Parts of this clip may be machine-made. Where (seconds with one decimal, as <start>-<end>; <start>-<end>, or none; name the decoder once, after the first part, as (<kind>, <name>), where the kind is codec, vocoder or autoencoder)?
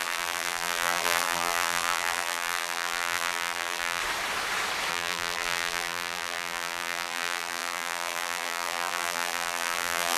0.0-4.0 (vocoder, BigVGAN v2); 4.9-10.2